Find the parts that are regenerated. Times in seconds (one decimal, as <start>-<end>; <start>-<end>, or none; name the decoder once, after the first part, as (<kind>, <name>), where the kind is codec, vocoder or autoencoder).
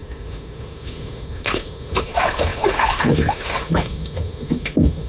0.0-5.1 (autoencoder, DAC-VAE)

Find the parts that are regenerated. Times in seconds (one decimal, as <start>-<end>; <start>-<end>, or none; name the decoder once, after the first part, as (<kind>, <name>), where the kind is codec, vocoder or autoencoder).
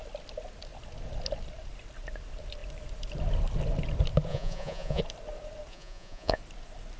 4.3-5.0 (vocoder, Vocos); 5.7-6.4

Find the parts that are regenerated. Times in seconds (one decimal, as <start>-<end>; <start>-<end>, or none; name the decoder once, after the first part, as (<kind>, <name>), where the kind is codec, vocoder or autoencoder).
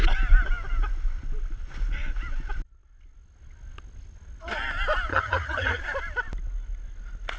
5.1-5.8 (vocoder, HiFi-GAN)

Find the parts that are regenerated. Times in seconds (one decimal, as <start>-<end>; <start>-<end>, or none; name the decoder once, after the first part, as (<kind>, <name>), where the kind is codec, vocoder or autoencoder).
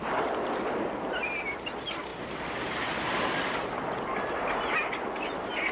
none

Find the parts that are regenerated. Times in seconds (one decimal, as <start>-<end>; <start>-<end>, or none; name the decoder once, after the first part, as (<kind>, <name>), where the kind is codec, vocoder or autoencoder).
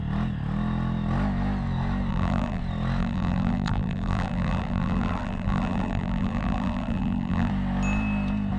2.1-2.6 (vocoder, BigVGAN v2); 3.0-7.5